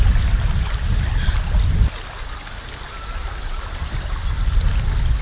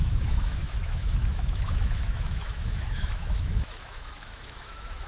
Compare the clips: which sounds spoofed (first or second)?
second